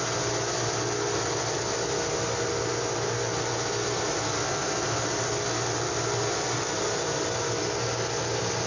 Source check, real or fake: real